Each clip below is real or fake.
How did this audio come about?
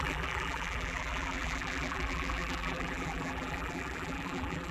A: fake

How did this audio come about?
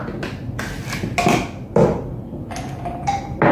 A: real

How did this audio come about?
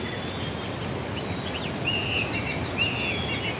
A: real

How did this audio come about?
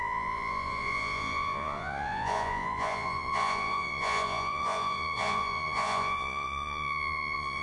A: fake